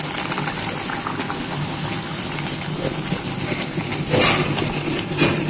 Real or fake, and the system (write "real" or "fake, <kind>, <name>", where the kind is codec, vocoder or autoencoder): real